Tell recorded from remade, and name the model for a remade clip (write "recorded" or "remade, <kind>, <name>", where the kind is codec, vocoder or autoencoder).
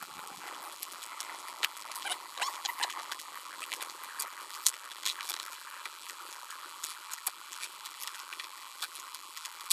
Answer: remade, vocoder, BigVGAN v2